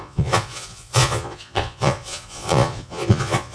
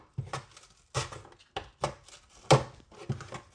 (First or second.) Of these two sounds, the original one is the second